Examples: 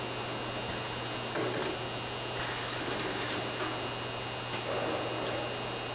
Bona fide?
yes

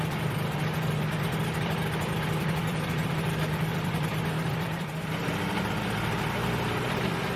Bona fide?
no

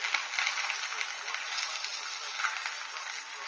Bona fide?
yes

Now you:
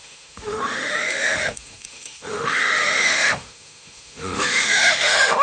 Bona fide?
no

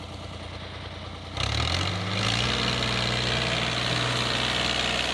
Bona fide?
yes